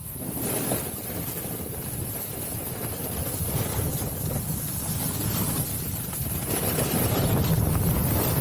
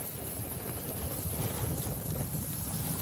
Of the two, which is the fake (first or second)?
second